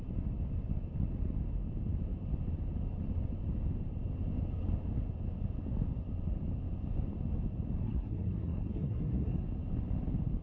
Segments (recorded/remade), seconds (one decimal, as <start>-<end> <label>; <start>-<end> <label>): 0.0-7.8 recorded; 7.8-9.4 remade; 9.4-10.4 recorded

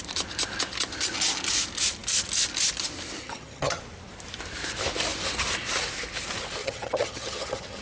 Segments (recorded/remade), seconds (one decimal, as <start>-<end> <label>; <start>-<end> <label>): 0.0-3.2 recorded; 3.2-3.8 remade; 3.8-6.6 recorded; 6.6-7.8 remade

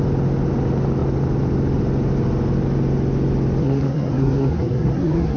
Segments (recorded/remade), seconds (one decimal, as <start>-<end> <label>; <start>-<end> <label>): 0.0-3.6 recorded; 3.6-5.4 remade

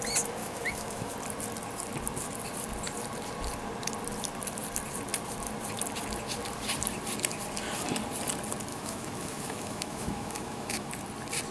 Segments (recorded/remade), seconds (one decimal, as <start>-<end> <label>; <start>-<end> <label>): 0.0-0.4 recorded; 0.4-1.1 remade; 1.1-8.7 recorded; 8.7-10.9 remade; 10.9-11.5 recorded

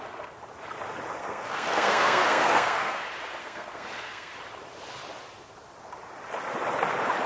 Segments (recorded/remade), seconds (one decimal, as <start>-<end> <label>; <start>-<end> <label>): 0.0-1.2 recorded; 1.2-3.0 remade; 3.0-3.4 recorded; 3.4-4.3 remade; 4.3-7.3 recorded

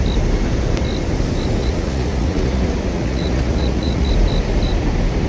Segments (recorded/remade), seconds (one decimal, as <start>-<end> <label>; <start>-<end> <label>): 0.0-1.6 recorded; 1.6-4.1 remade; 4.1-5.3 recorded

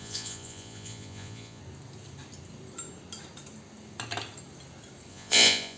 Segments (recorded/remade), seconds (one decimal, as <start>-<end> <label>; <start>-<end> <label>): 0.0-1.6 remade; 1.6-5.1 recorded; 5.1-5.8 remade